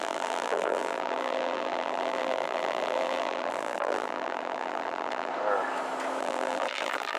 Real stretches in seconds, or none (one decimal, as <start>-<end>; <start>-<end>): 5.3-6.2